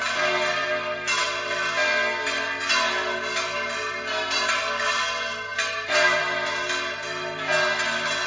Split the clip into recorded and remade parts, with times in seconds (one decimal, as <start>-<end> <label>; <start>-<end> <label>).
0.0-8.3 recorded